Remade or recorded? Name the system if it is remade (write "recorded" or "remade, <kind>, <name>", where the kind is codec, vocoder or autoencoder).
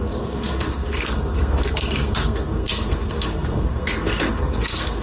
remade, codec, SNAC